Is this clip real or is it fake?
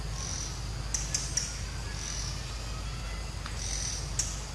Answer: real